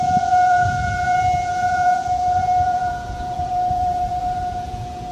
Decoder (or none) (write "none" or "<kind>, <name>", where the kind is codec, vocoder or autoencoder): vocoder, Vocos